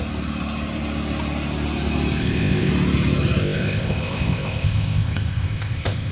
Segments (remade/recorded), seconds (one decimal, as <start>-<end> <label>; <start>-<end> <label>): 0.0-2.2 recorded; 2.2-2.7 remade; 2.7-3.4 recorded; 3.4-6.1 remade